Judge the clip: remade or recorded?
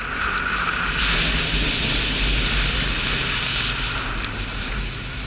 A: recorded